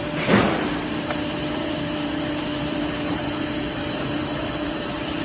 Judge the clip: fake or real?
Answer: fake